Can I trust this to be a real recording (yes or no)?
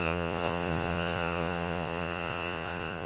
no